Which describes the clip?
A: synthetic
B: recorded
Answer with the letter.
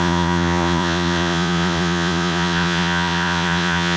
A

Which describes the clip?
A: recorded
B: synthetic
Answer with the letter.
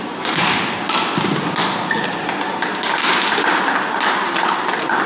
A